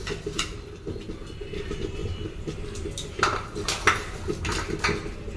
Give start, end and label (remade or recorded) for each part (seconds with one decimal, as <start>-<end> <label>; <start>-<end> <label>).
0.0-5.4 recorded